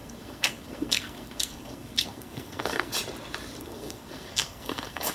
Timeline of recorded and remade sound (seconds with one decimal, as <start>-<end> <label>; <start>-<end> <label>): 0.0-2.9 remade; 2.9-3.6 recorded; 3.6-5.1 remade